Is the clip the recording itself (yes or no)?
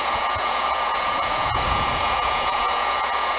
no